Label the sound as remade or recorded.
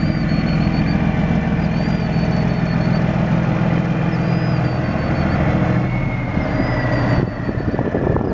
recorded